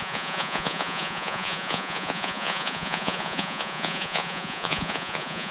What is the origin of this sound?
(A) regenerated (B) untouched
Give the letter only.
A